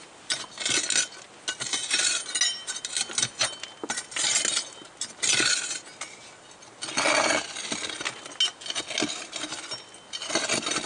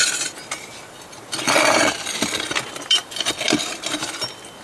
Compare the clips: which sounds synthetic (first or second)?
second